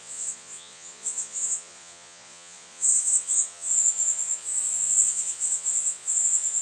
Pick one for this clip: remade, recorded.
remade